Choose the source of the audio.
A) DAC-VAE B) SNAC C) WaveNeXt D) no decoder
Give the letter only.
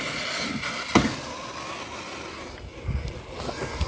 D